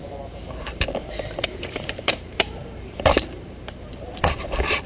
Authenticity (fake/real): fake